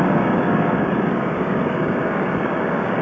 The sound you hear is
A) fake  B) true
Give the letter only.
A